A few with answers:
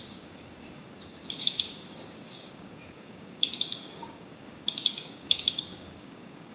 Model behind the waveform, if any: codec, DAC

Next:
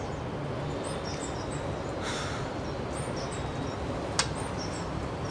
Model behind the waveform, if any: none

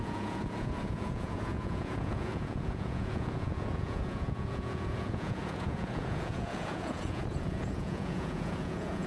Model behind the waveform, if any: vocoder, Vocos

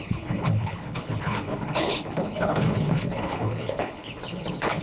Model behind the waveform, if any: codec, HILCodec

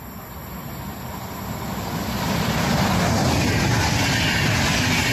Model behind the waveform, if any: none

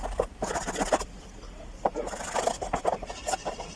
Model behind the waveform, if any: none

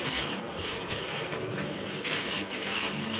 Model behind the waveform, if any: codec, SNAC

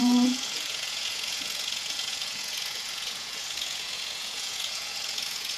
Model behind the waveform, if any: vocoder, Vocos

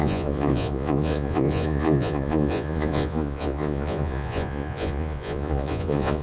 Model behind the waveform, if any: vocoder, Vocos